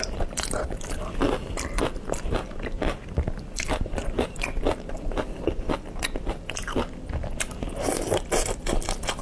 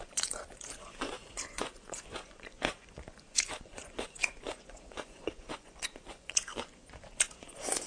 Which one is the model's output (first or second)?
second